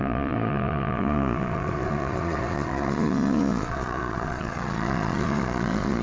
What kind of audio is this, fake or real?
fake